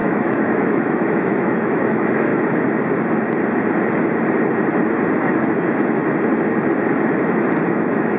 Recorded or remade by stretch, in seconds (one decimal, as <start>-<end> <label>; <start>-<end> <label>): 0.0-2.3 remade; 2.3-5.3 recorded; 5.3-6.0 remade; 6.0-7.7 recorded; 7.7-8.2 remade